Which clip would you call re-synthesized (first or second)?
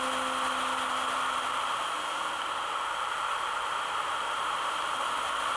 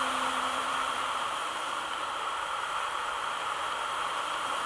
second